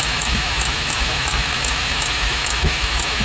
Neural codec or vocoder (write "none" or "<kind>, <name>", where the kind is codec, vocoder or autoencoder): autoencoder, DAC-VAE